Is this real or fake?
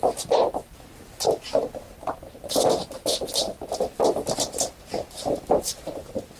fake